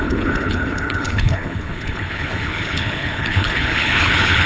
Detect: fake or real fake